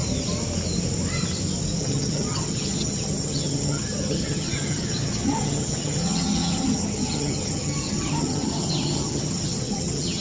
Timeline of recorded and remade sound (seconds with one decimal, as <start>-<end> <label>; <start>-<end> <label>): 0.0-1.8 recorded; 1.8-10.2 remade